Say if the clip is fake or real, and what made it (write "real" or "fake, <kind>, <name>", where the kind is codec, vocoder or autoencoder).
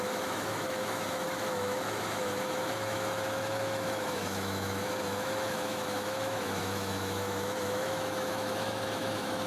fake, autoencoder, DAC-VAE